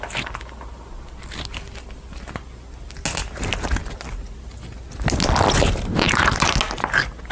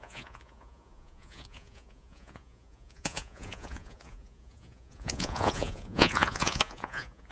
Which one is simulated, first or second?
second